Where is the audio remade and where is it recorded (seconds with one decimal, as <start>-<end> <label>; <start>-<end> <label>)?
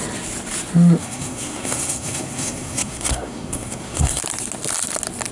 0.0-1.0 recorded; 1.0-4.2 remade; 4.2-5.3 recorded